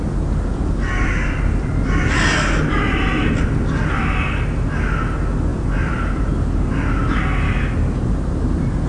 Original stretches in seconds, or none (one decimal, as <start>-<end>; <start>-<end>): 0.0-8.9